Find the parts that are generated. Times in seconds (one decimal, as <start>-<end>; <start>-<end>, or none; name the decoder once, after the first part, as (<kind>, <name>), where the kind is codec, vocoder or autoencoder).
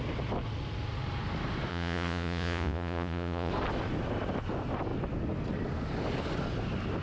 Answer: 1.7-3.5 (vocoder, Vocos)